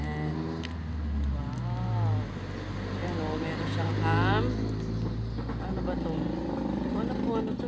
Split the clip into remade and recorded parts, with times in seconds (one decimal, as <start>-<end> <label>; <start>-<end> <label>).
0.0-7.7 recorded

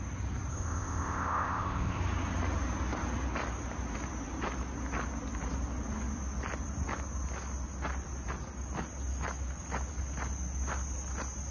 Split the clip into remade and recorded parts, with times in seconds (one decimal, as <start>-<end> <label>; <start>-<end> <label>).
0.0-0.5 recorded; 0.5-2.0 remade; 2.0-11.5 recorded

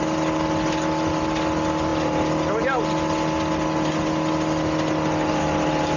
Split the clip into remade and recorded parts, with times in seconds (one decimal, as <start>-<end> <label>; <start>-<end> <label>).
0.0-6.0 recorded

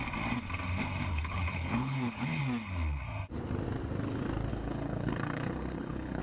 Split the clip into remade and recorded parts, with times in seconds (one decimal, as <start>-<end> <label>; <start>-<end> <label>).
0.0-1.1 recorded; 1.1-2.4 remade; 2.4-4.5 recorded; 4.5-6.2 remade

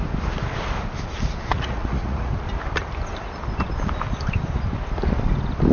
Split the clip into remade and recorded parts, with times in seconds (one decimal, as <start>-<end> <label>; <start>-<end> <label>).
0.0-1.5 recorded; 1.5-2.3 remade; 2.3-5.7 recorded